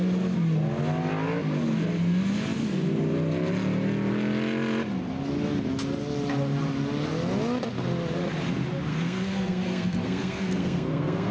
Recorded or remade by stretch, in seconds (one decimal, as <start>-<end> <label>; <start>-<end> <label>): 0.0-8.9 recorded; 8.9-11.3 remade